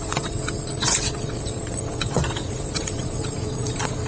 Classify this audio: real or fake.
fake